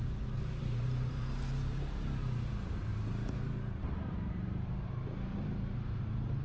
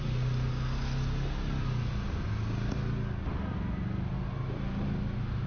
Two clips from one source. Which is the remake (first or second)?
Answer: first